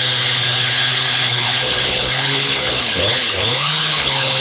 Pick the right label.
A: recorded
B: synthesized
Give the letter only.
B